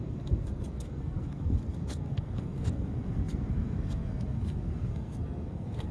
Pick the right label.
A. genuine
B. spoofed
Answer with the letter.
B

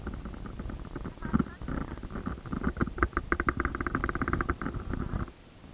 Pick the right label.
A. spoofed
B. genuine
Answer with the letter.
B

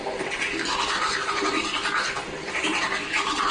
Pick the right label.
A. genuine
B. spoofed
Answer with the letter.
A